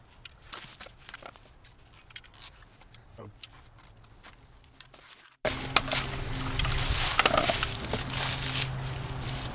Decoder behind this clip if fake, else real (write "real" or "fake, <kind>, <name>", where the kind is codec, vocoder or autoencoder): real